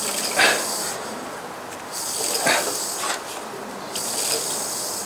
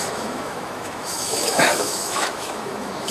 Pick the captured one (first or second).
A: first